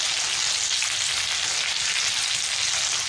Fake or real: real